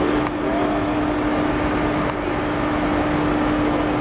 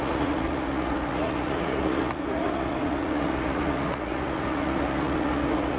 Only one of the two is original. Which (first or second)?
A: first